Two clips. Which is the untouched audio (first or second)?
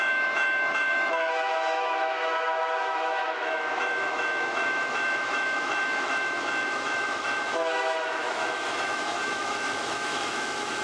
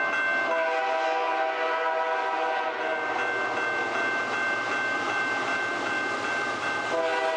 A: second